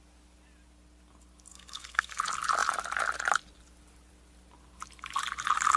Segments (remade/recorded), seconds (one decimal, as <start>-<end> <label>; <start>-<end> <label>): 0.0-1.5 recorded; 1.5-2.2 remade; 2.2-5.8 recorded